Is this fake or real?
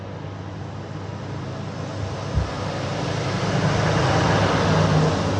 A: real